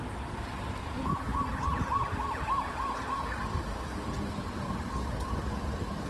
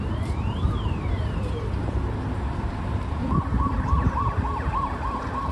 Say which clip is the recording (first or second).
first